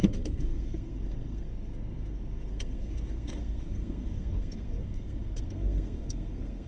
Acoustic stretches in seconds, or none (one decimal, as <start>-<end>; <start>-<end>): none